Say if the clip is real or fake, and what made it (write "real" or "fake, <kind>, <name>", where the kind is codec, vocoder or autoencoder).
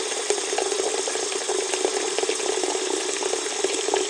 real